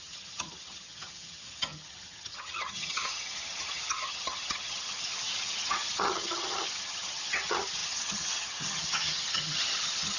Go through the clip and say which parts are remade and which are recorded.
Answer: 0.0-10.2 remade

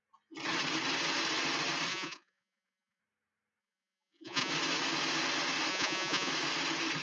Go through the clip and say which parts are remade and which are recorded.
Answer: 0.0-1.9 recorded; 1.9-3.0 remade; 3.0-3.6 recorded; 3.6-4.5 remade; 4.5-5.7 recorded; 5.7-6.3 remade; 6.3-7.0 recorded

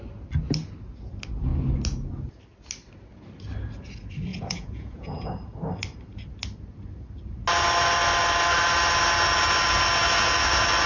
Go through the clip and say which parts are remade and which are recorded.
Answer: 0.0-4.3 recorded; 4.3-5.3 remade; 5.3-10.9 recorded

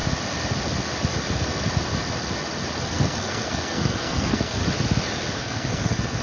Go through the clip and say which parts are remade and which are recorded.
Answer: 0.0-2.9 recorded; 2.9-4.6 remade; 4.6-5.4 recorded; 5.4-6.2 remade

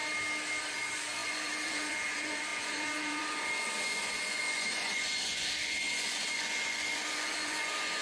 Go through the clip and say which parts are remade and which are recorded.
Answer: 0.0-0.6 recorded; 0.6-8.0 remade